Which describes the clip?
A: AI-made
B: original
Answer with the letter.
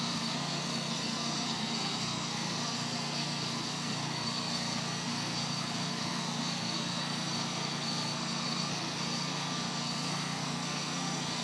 A